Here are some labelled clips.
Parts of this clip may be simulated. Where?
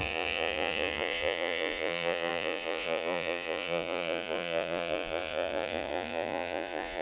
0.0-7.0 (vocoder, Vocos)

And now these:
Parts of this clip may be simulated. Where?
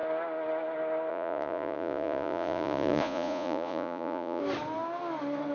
1.1-4.4 (vocoder, Vocos)